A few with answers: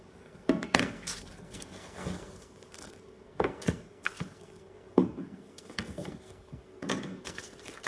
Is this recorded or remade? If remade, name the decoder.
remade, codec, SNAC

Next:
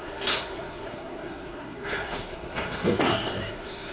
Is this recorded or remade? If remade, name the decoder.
remade, codec, SNAC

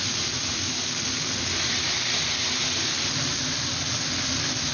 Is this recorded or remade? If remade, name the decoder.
recorded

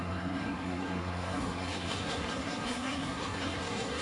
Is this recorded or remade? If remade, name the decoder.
remade, codec, SNAC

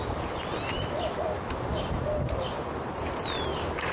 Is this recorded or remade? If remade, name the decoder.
recorded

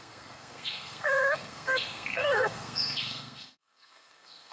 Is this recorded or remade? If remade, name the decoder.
remade, codec, SNAC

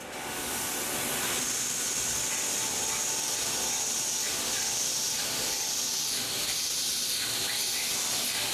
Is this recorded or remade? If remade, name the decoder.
recorded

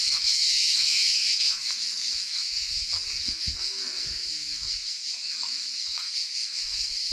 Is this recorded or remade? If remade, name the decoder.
remade, codec, SNAC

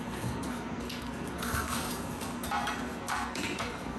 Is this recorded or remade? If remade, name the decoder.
remade, codec, SNAC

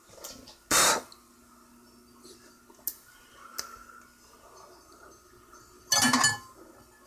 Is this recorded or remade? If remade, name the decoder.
recorded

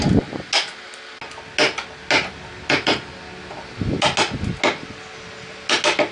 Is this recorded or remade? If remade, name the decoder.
recorded